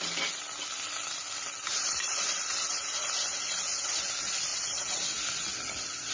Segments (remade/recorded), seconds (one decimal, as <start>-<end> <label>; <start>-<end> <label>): 0.0-6.1 recorded